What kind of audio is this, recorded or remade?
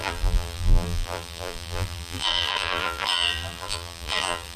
remade